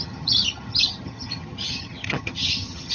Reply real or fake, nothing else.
fake